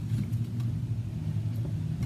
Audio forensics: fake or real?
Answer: real